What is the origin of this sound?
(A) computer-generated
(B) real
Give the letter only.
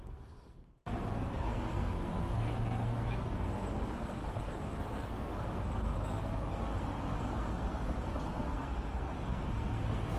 A